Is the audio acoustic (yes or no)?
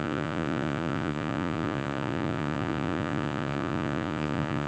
no